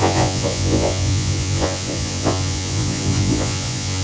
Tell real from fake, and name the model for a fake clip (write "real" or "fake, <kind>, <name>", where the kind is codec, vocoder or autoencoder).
fake, vocoder, Vocos